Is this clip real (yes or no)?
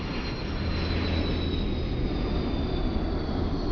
yes